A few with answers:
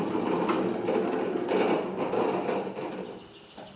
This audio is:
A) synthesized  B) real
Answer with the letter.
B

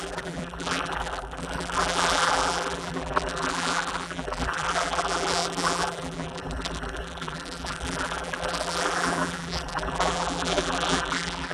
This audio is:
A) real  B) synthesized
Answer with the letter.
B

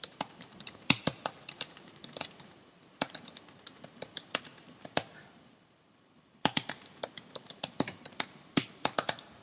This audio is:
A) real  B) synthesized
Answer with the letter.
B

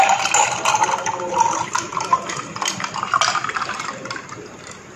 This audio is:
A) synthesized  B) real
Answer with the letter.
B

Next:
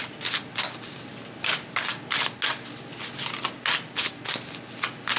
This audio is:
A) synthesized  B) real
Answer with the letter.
B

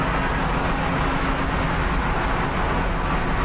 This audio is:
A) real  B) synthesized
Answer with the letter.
A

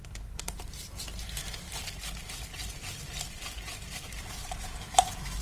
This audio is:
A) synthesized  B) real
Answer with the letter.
B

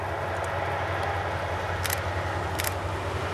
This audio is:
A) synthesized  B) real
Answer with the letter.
B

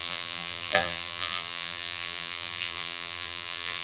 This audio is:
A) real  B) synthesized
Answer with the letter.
B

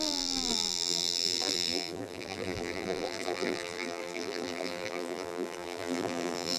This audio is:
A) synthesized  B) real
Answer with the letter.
A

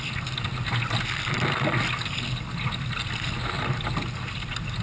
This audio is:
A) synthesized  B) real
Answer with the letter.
B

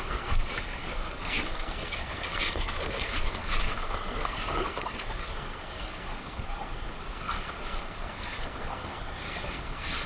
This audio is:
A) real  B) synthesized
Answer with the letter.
B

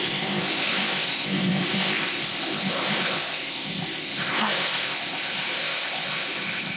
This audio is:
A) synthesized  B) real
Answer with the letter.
A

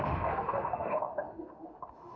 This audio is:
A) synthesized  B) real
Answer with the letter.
A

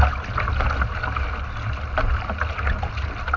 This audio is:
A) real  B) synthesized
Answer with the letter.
A